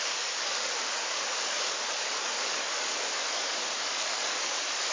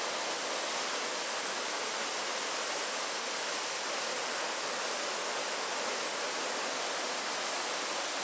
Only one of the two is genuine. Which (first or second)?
second